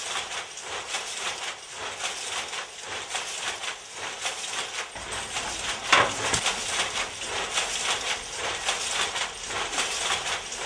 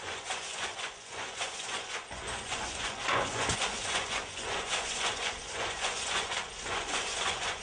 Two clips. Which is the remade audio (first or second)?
second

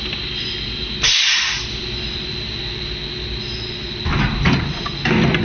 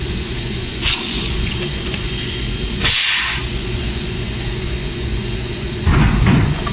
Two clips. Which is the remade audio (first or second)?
second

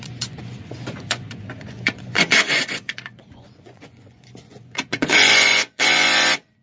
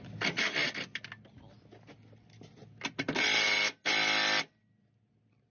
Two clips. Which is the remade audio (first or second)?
first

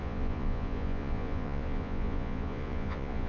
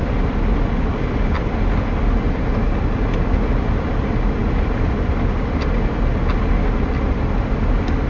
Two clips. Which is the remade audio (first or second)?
first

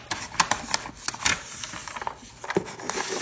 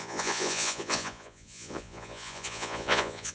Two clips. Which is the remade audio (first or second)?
second